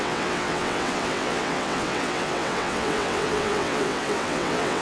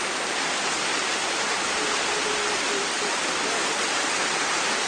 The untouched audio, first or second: second